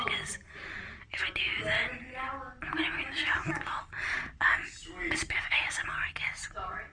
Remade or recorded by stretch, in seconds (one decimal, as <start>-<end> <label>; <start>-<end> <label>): 0.0-6.9 recorded